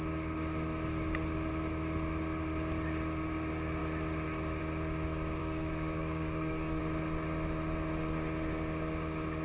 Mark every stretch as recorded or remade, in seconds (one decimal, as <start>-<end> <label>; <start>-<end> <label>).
0.0-5.4 recorded; 5.4-6.8 remade; 6.8-9.4 recorded